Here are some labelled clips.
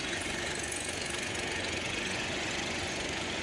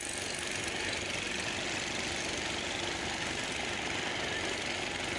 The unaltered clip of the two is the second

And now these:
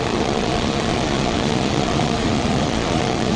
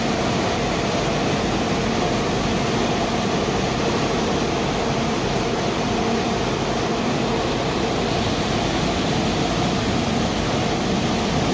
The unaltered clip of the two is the second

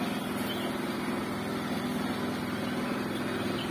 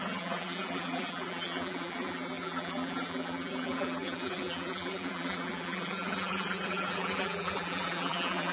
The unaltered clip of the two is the first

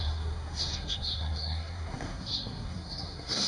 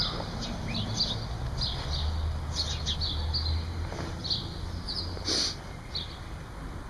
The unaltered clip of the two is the second